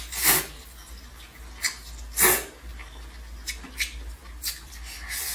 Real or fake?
real